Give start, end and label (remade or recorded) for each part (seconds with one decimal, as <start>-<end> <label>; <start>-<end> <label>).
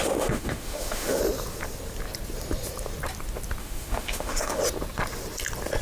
0.0-1.2 remade; 1.2-3.6 recorded; 3.6-4.6 remade; 4.6-5.8 recorded